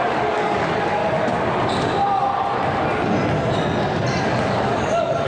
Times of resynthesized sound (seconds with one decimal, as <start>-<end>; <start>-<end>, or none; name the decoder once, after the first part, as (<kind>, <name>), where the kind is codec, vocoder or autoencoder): 0.0-1.0 (codec, DAC); 4.2-5.3